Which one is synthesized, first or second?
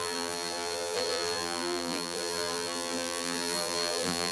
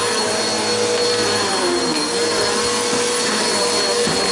first